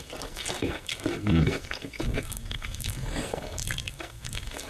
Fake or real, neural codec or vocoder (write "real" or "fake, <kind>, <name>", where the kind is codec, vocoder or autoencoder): fake, codec, SNAC